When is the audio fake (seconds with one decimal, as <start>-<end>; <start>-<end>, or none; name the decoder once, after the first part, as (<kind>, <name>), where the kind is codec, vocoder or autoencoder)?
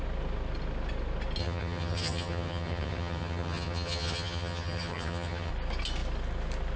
1.4-5.5 (vocoder, HiFi-GAN)